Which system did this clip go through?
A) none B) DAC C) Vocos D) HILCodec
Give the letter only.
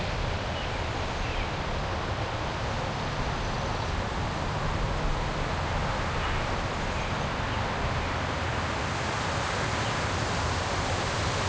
A